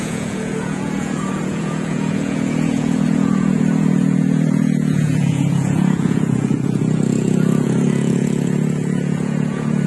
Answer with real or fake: fake